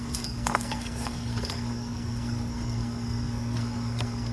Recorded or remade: remade